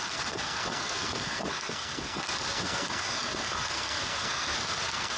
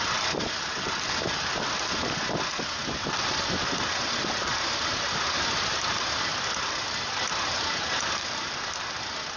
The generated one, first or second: first